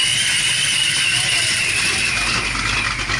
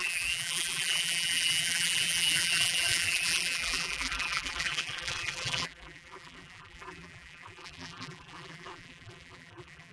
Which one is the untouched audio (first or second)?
first